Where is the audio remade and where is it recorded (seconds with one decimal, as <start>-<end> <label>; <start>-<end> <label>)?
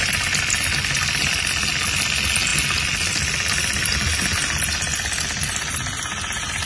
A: 0.0-6.7 recorded